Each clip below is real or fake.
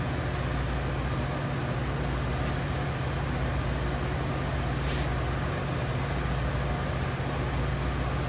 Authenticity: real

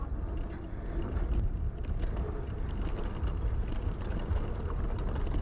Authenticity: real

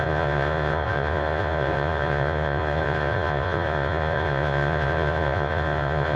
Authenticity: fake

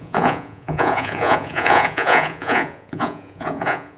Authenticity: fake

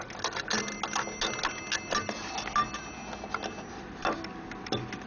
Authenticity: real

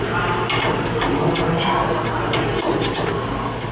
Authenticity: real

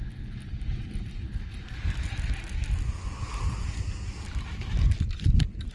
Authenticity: real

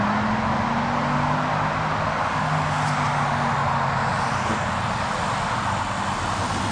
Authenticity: real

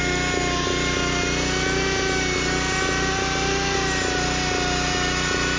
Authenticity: real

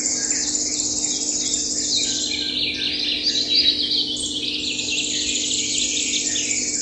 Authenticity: real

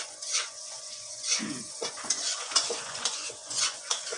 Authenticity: fake